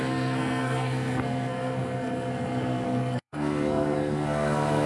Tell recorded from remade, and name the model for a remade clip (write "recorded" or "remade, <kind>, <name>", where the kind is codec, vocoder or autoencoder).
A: remade, codec, SNAC